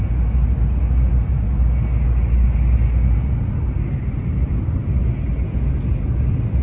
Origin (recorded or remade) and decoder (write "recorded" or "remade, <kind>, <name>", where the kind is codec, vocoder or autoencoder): recorded